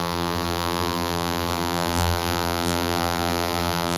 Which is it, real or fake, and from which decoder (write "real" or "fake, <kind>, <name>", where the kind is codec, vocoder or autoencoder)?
fake, vocoder, BigVGAN v2